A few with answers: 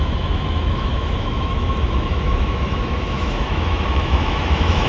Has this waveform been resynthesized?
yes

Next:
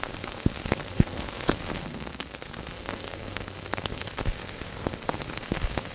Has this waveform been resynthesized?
yes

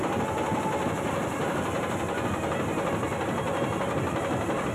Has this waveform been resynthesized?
no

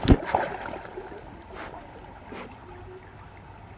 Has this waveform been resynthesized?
no